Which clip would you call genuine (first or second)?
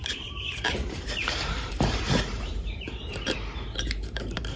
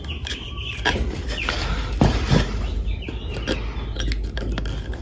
second